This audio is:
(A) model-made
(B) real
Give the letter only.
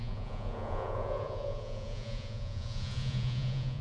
A